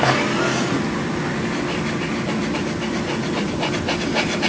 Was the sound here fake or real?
real